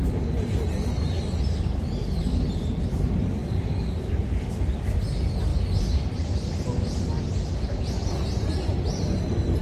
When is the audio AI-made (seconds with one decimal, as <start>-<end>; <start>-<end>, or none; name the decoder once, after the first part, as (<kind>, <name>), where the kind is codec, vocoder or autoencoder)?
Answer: none